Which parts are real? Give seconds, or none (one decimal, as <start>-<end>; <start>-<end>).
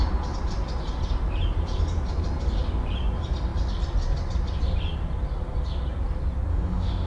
0.0-6.5